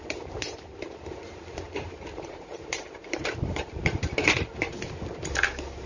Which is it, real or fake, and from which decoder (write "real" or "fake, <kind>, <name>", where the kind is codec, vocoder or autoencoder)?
fake, vocoder, BigVGAN v2